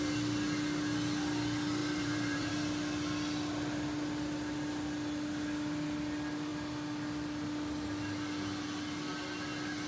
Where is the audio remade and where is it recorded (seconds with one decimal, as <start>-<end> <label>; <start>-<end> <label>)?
0.0-1.8 recorded; 1.8-2.5 remade; 2.5-9.9 recorded